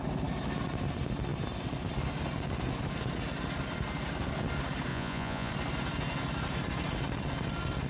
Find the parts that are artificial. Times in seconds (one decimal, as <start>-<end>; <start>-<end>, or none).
4.9-5.5